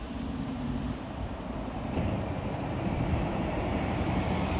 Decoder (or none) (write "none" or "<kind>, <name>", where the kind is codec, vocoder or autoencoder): vocoder, BigVGAN v2